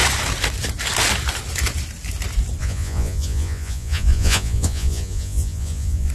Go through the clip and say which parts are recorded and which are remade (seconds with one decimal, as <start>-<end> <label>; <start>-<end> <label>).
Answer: 0.0-2.6 recorded; 2.6-6.1 remade